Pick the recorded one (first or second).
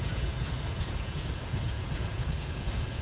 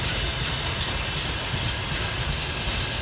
second